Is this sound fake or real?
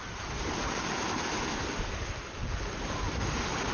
fake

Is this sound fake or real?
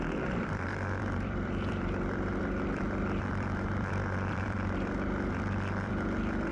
fake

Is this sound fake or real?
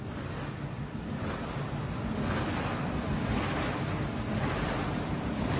real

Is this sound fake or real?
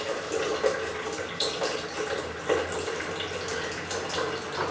real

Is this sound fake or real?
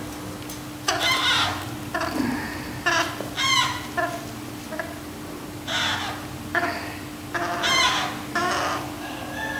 real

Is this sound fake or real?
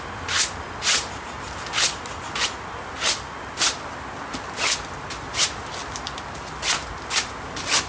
real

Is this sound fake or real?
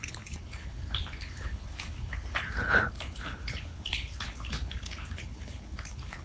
fake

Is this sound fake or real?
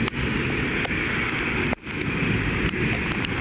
real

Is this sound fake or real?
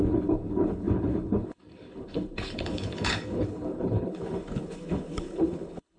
fake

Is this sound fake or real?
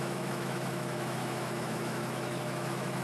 fake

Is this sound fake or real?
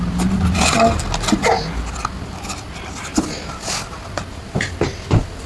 real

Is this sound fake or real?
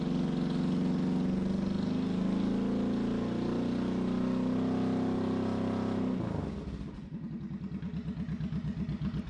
real